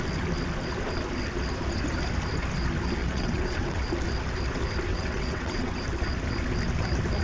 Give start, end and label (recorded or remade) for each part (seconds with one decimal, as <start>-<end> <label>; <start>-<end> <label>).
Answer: 0.0-3.0 recorded; 3.0-3.8 remade; 3.8-4.9 recorded; 4.9-5.8 remade; 5.8-7.2 recorded